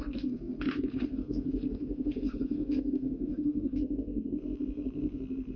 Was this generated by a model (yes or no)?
yes